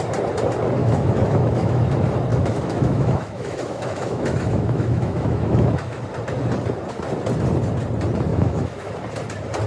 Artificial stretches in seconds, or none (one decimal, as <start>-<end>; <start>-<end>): 0.8-1.8; 2.3-6.0; 8.3-8.9